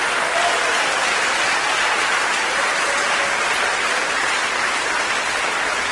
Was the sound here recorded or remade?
recorded